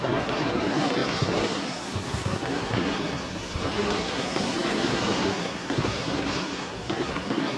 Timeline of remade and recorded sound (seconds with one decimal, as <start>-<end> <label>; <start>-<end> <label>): 0.0-7.6 remade